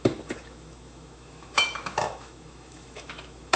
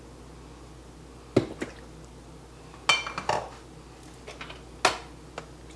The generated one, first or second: first